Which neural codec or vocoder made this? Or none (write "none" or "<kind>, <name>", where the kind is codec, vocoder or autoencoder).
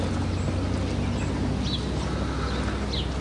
none